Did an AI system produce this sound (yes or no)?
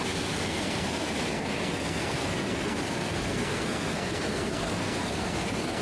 yes